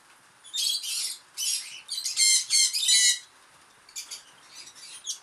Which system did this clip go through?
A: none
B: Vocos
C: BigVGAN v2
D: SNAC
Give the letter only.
A